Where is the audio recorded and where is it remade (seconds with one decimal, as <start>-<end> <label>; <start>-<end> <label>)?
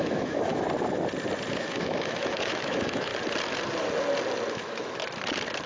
0.0-0.5 remade; 0.5-1.5 recorded; 1.5-3.1 remade; 3.1-4.5 recorded; 4.5-5.0 remade; 5.0-5.7 recorded